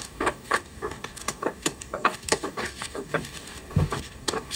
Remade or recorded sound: remade